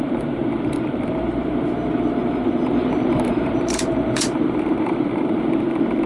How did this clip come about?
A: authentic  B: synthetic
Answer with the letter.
B